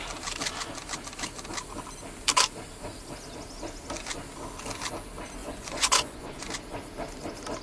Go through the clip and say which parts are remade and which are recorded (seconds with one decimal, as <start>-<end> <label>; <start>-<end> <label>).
0.0-5.4 recorded; 5.4-6.5 remade; 6.5-7.6 recorded